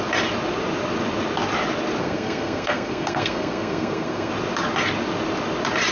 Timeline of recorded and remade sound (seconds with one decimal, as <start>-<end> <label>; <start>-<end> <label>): 0.0-2.0 recorded; 2.0-4.3 remade; 4.3-5.9 recorded